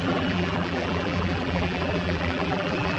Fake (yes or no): yes